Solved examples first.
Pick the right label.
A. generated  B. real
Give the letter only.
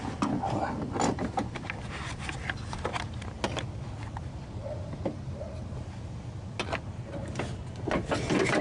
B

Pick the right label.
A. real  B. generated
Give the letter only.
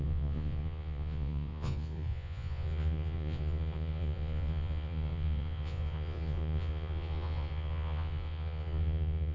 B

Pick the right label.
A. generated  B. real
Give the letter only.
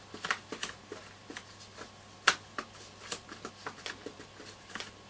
B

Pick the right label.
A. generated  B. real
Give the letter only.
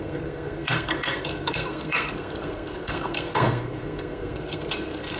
A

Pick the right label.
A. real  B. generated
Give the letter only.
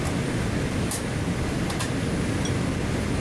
A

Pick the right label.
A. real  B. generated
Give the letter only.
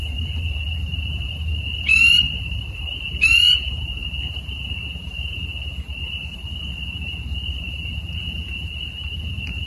B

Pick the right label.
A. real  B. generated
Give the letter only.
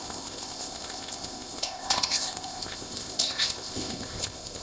B